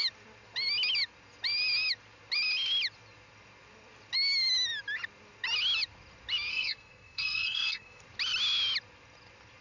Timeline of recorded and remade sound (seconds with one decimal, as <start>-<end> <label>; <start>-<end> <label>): 0.0-6.5 recorded; 6.5-8.0 remade; 8.0-9.6 recorded